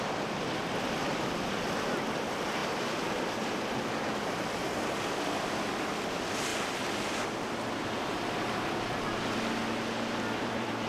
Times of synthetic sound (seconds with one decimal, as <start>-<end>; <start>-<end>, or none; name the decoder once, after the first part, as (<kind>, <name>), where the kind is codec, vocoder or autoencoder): 0.0-2.6 (vocoder, BigVGAN v2); 6.1-6.5; 10.4-10.9